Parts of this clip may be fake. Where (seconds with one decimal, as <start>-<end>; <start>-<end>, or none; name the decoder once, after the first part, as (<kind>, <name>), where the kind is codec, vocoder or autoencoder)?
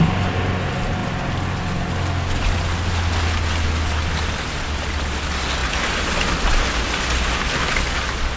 none